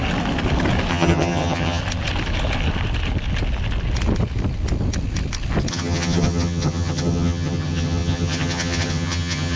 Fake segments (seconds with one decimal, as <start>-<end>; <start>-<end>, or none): 0.9-1.8; 5.7-9.6